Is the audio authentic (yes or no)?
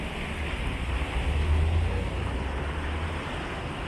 yes